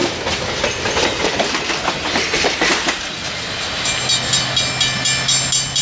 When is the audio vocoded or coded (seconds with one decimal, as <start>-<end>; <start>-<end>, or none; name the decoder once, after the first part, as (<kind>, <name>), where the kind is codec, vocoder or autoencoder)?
none